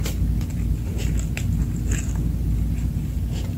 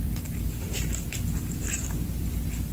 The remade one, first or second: second